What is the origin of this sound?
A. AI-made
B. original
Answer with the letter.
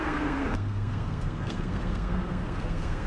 A